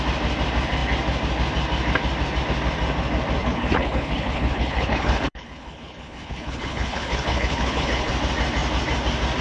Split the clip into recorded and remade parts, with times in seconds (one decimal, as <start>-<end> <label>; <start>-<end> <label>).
0.0-3.4 recorded; 3.4-8.1 remade; 8.1-9.4 recorded